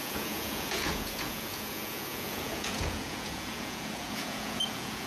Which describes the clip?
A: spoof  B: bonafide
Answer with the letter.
A